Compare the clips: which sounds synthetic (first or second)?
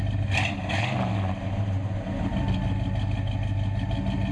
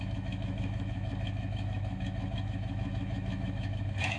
second